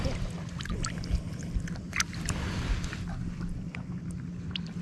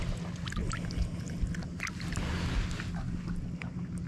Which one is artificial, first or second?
first